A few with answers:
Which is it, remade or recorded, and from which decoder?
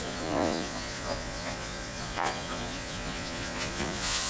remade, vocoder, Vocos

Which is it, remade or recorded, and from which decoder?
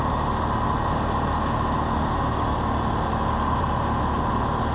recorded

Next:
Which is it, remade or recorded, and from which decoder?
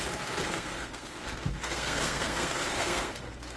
remade, codec, SNAC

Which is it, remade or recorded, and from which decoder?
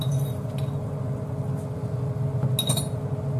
recorded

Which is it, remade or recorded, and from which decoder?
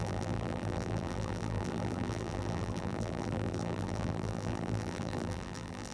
remade, vocoder, BigVGAN v2